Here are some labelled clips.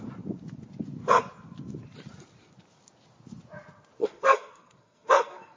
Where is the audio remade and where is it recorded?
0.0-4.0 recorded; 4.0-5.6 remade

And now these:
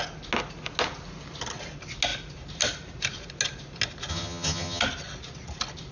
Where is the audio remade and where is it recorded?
0.0-4.1 recorded; 4.1-4.8 remade; 4.8-5.9 recorded